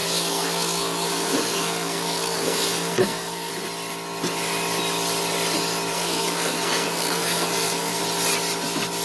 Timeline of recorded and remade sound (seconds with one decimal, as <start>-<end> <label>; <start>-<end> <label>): 0.0-3.5 remade; 3.5-5.9 recorded; 5.9-8.0 remade; 8.0-9.0 recorded

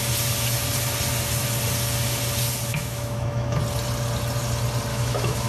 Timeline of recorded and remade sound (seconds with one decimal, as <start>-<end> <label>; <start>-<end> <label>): 0.0-2.7 recorded; 2.7-3.6 remade; 3.6-4.9 recorded; 4.9-5.5 remade